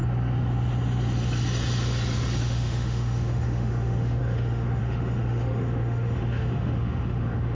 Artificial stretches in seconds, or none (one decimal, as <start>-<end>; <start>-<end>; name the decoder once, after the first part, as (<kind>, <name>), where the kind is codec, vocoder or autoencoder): 2.4-7.5 (autoencoder, DAC-VAE)